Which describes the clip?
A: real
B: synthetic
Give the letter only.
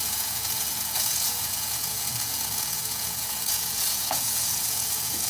B